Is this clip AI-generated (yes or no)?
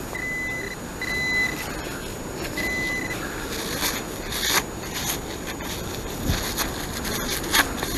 no